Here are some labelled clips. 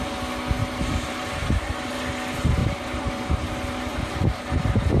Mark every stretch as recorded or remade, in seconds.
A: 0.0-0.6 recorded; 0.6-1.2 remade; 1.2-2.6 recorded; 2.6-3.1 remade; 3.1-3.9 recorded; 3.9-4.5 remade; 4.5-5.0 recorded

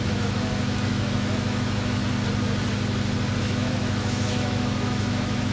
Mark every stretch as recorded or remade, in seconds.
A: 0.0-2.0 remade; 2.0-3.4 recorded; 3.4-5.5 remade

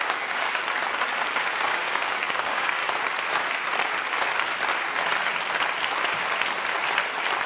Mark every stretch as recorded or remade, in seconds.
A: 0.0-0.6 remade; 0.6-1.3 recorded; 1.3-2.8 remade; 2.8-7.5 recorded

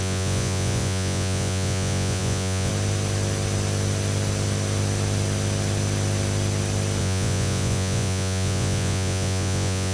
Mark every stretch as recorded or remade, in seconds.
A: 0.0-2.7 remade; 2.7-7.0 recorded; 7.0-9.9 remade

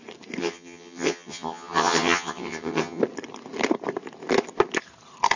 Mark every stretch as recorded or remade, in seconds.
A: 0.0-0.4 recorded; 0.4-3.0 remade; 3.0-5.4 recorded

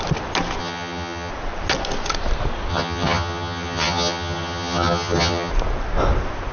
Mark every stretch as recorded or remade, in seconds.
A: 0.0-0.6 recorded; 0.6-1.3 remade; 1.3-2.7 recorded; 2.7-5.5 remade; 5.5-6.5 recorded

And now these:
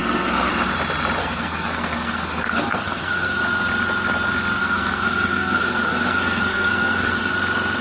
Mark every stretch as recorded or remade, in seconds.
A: 0.0-0.5 remade; 0.5-1.2 recorded; 1.2-3.4 remade; 3.4-4.6 recorded; 4.6-7.3 remade; 7.3-7.8 recorded

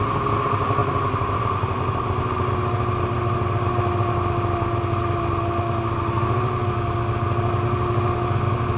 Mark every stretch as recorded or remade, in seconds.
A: 0.0-8.8 recorded